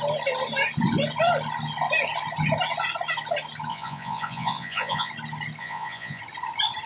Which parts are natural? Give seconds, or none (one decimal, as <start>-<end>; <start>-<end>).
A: 0.0-3.7; 5.1-5.6; 6.2-6.9